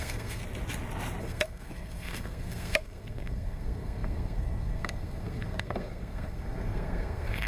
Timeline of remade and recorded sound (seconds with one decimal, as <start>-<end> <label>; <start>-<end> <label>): 0.0-0.4 remade; 0.4-1.2 recorded; 1.2-7.5 remade

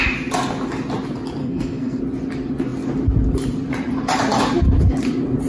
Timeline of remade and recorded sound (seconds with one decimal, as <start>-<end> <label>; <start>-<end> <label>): 0.0-1.4 recorded; 1.4-2.0 remade; 2.0-5.5 recorded

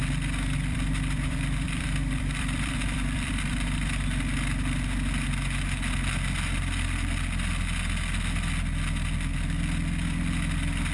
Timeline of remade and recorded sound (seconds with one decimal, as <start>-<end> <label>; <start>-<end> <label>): 0.0-0.7 recorded; 0.7-4.2 remade; 4.2-10.9 recorded

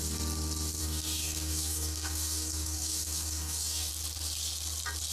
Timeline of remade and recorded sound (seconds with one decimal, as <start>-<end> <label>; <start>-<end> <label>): 0.0-0.8 recorded; 0.8-3.9 remade; 3.9-5.1 recorded

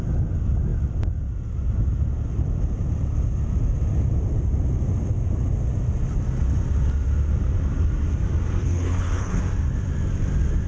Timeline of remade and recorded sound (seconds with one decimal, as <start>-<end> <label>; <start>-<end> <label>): 0.0-8.6 recorded; 8.6-9.4 remade; 9.4-10.7 recorded

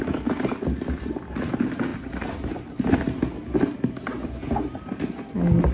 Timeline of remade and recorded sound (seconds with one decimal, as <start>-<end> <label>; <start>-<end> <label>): 0.0-5.7 recorded

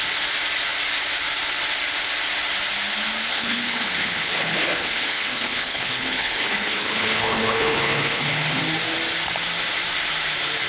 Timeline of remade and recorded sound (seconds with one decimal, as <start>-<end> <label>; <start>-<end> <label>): 0.0-3.3 recorded; 3.3-8.6 remade; 8.6-10.7 recorded

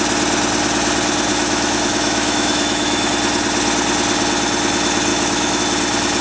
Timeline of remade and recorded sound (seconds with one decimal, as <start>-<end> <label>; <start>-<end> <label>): 0.0-1.3 recorded; 1.3-3.1 remade; 3.1-5.1 recorded; 5.1-5.6 remade; 5.6-6.2 recorded